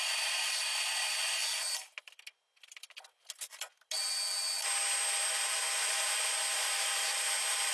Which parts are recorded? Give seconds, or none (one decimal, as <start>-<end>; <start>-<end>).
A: 0.0-7.7